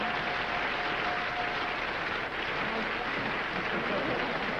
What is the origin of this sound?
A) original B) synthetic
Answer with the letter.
A